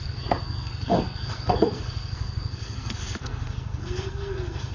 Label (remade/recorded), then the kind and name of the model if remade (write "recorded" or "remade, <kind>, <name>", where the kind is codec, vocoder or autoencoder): remade, codec, SNAC